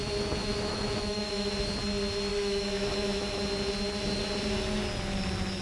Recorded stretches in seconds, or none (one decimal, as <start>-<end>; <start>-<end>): 0.0-0.4; 1.5-2.3; 3.4-5.6

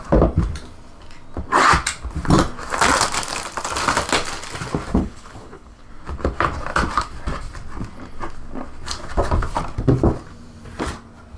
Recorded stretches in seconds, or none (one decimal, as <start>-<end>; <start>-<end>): 0.0-5.0; 5.9-11.4

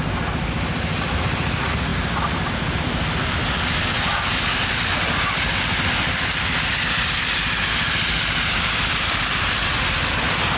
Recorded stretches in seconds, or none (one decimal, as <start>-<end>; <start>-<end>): 0.0-10.6

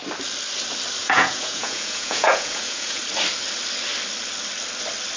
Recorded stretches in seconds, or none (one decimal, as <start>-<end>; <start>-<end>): 0.0-1.0; 3.0-5.2

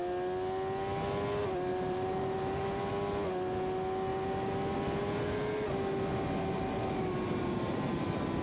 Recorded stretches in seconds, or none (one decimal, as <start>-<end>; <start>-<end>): 0.0-1.7; 2.9-8.4

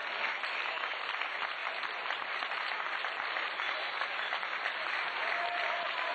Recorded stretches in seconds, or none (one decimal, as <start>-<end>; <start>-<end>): 0.0-6.1